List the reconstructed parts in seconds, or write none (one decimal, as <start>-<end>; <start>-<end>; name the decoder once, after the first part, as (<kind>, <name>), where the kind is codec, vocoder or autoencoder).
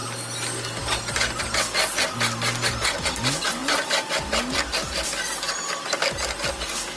none